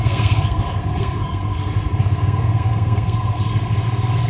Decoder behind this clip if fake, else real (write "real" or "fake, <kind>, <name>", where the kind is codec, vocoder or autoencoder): fake, codec, SNAC